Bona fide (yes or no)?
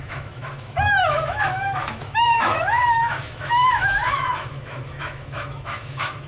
no